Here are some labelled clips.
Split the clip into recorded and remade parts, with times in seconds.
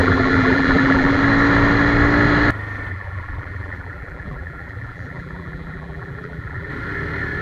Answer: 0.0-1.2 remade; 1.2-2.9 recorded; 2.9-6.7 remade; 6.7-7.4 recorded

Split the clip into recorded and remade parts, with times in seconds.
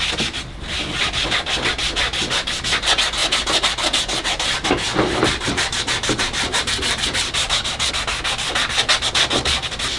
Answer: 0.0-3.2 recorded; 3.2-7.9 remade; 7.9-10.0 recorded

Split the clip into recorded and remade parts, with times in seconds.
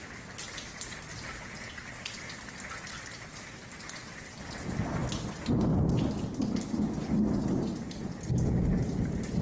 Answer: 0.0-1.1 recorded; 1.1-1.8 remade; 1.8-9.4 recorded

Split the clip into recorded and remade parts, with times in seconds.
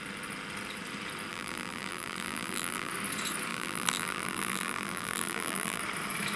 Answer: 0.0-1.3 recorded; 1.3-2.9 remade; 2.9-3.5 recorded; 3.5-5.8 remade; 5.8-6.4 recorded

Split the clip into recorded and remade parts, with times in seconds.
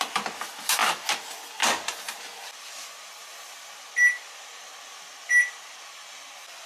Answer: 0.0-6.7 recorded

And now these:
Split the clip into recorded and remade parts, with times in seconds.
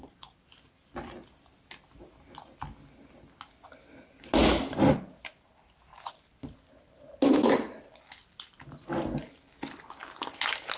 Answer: 0.0-4.4 recorded; 4.4-5.2 remade; 5.2-10.8 recorded